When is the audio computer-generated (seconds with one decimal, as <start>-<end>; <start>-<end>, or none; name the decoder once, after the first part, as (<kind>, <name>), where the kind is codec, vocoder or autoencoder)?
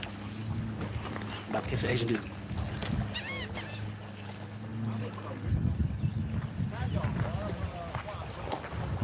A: none